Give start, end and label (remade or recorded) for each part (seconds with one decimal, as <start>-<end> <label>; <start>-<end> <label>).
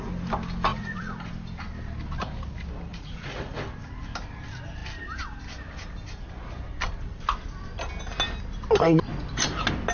0.0-0.7 recorded; 0.7-1.3 remade; 1.3-2.9 recorded; 2.9-3.6 remade; 3.6-9.9 recorded